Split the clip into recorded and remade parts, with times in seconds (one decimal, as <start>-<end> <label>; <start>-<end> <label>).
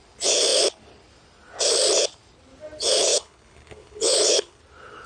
0.0-3.1 recorded; 3.1-4.6 remade; 4.6-5.1 recorded